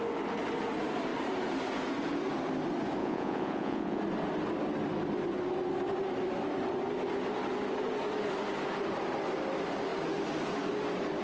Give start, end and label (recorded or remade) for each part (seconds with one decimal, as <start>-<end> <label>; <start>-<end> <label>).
0.0-3.0 recorded; 3.0-4.0 remade; 4.0-11.2 recorded